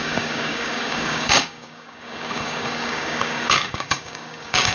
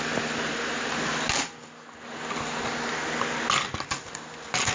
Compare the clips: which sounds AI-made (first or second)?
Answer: first